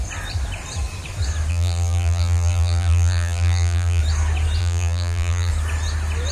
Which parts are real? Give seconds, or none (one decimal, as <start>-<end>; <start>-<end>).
0.0-1.5; 4.0-4.6; 5.5-6.3